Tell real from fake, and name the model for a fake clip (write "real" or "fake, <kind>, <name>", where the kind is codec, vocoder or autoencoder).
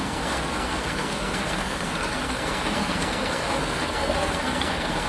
fake, codec, SNAC